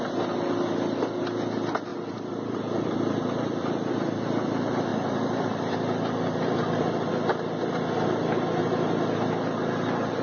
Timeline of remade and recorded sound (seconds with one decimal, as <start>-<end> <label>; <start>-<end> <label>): 0.0-1.9 recorded; 1.9-3.9 remade; 3.9-4.9 recorded; 4.9-7.1 remade; 7.1-10.2 recorded